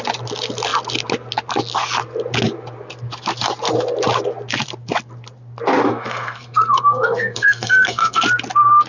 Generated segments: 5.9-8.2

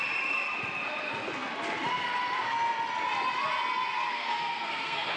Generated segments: 4.1-5.2

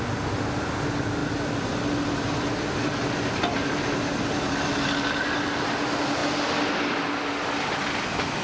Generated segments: none